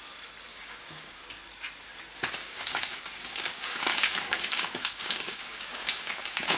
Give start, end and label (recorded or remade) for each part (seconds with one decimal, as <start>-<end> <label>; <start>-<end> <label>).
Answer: 0.0-0.5 recorded; 0.5-1.2 remade; 1.2-2.4 recorded; 2.4-6.6 remade